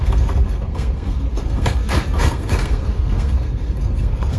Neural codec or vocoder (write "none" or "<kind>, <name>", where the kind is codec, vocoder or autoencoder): codec, SNAC